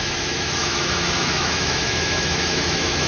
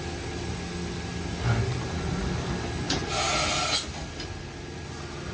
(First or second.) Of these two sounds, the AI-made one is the first